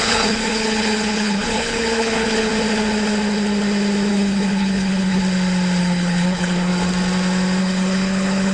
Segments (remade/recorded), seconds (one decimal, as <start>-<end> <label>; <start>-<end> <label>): 0.0-2.5 remade; 2.5-4.1 recorded; 4.1-5.2 remade; 5.2-5.8 recorded; 5.8-6.7 remade; 6.7-7.6 recorded; 7.6-8.5 remade

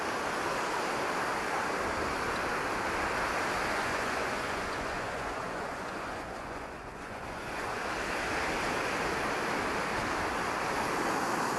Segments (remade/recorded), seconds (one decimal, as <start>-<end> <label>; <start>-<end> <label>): 0.0-3.7 recorded; 3.7-7.8 remade; 7.8-11.6 recorded

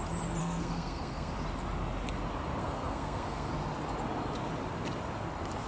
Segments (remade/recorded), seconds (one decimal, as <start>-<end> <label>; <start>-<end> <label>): 0.0-0.4 recorded; 0.4-1.3 remade; 1.3-2.6 recorded; 2.6-3.5 remade; 3.5-5.7 recorded

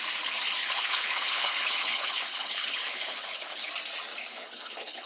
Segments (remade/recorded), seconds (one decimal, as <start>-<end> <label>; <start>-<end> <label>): 0.0-0.6 recorded; 0.6-3.7 remade; 3.7-4.2 recorded; 4.2-5.1 remade